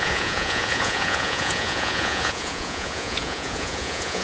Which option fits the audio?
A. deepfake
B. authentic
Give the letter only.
A